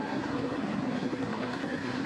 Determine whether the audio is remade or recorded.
remade